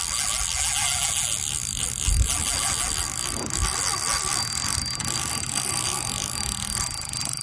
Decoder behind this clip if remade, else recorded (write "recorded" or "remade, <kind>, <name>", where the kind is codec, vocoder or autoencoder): recorded